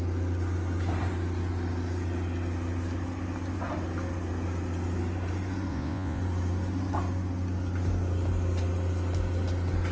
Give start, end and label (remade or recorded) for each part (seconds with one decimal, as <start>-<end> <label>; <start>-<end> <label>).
0.0-5.7 recorded; 5.7-6.2 remade; 6.2-9.9 recorded